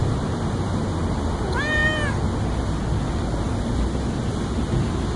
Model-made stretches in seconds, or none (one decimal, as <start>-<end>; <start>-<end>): none